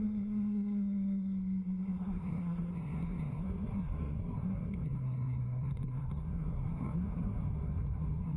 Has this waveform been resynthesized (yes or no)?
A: yes